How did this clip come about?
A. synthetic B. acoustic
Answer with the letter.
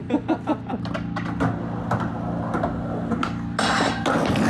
B